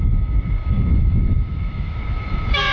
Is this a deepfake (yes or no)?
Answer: yes